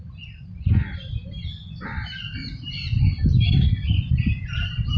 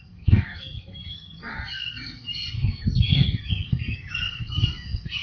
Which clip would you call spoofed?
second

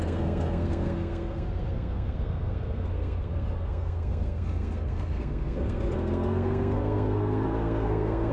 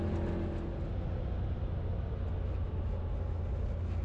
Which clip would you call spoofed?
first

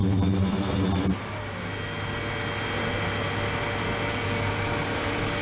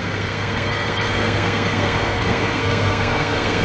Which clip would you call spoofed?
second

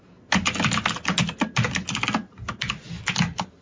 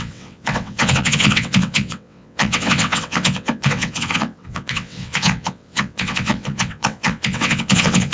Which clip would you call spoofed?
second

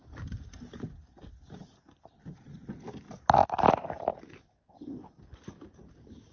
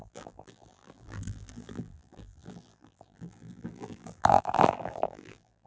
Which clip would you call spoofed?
second